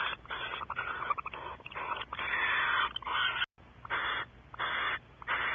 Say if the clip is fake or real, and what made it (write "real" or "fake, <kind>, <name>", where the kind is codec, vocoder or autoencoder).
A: real